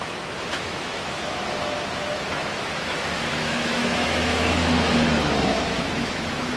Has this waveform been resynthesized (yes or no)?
yes